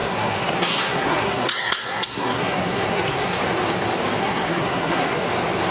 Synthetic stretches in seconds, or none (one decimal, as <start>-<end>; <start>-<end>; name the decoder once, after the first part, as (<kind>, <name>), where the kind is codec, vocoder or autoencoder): 0.0-3.4 (codec, SNAC); 4.2-5.3